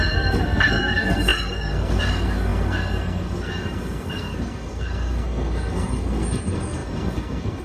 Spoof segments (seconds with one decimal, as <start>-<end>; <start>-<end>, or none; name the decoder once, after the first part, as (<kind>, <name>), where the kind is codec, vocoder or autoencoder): 0.0-7.6 (codec, SNAC)

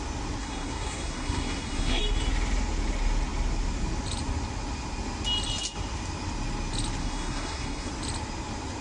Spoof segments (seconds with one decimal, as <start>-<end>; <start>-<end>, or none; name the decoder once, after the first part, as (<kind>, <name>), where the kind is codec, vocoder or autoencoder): 0.4-2.0 (codec, SNAC); 7.0-7.9